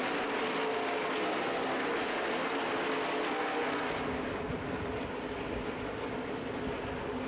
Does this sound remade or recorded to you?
recorded